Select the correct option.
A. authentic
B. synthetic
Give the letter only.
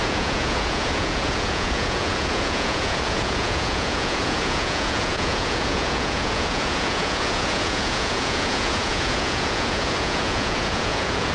B